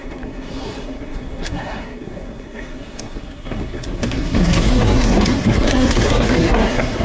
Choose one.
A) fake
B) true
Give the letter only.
A